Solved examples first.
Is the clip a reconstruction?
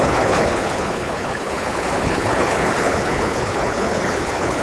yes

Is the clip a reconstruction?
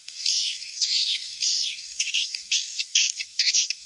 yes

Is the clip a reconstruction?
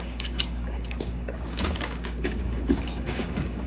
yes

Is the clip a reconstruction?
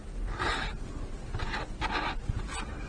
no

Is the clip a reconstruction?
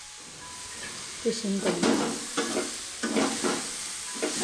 no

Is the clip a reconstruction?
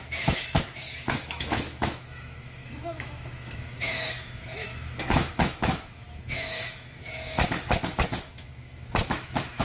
yes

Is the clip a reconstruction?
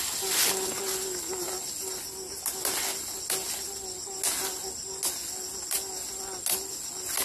no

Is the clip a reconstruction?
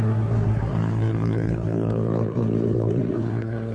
yes